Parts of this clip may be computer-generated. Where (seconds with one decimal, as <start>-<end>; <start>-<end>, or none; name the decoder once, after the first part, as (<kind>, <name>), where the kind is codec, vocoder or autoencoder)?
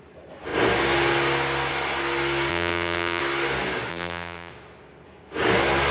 2.5-3.2 (vocoder, BigVGAN v2); 3.9-4.5